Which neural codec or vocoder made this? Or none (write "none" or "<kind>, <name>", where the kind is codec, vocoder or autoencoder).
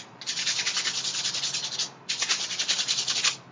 none